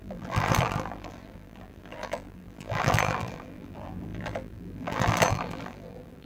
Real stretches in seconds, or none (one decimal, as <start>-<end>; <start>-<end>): none